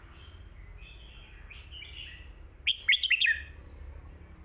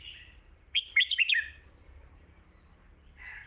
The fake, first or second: second